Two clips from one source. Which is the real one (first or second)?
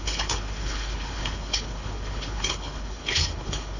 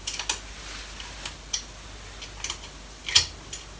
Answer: second